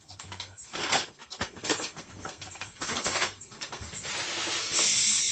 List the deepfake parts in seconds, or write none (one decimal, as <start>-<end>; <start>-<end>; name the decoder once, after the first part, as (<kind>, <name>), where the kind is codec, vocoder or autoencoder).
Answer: 0.0-4.1 (codec, SNAC); 4.6-5.3